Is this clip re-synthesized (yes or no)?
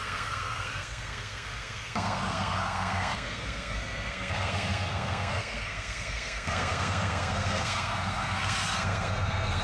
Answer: yes